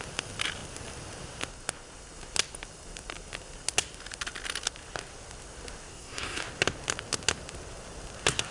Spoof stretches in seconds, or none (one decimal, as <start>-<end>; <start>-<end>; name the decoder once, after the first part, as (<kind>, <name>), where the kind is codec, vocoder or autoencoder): 5.9-6.4 (codec, SNAC)